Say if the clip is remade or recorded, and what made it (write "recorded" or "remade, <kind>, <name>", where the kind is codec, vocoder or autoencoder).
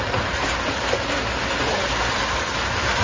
recorded